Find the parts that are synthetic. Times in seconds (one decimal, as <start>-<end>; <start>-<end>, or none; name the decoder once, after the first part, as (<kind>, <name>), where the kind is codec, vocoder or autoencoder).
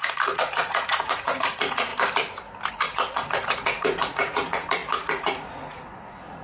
0.0-1.9 (vocoder, Vocos); 2.7-6.4